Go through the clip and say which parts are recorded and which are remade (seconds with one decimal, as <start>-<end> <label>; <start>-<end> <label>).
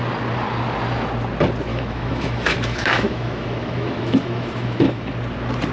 0.0-1.7 recorded; 1.7-5.1 remade; 5.1-5.7 recorded